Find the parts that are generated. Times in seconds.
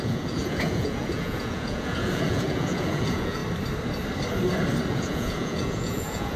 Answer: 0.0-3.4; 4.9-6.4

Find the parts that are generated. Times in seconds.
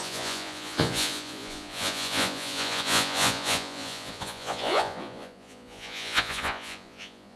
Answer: 0.0-7.4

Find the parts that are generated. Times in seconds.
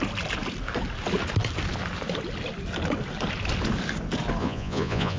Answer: 4.4-5.2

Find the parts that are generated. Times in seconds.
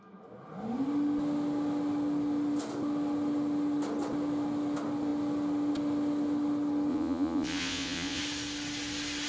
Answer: 6.9-8.2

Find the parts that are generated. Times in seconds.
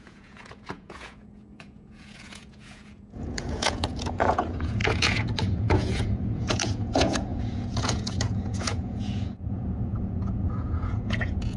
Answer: 0.0-11.6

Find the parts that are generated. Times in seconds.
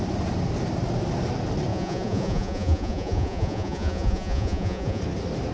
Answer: 1.7-5.0